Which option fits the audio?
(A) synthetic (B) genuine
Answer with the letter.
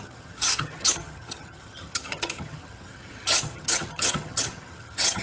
A